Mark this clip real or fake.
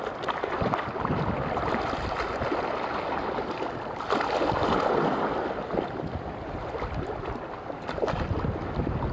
real